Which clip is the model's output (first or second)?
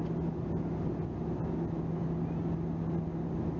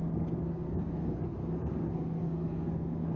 second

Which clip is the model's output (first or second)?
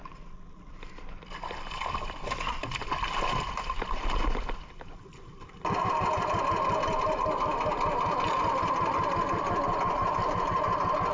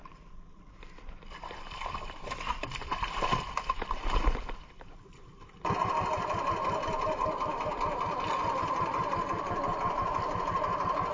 second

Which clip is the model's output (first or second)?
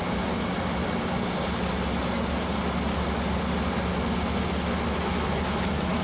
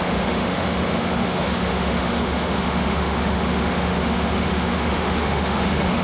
second